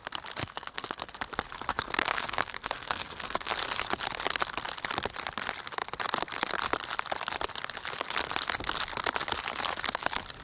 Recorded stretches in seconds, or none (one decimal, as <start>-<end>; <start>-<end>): 0.0-0.4; 1.1-1.7; 3.5-10.4